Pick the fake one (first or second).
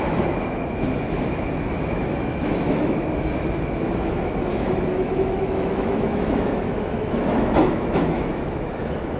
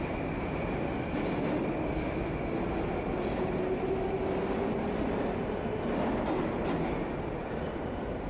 first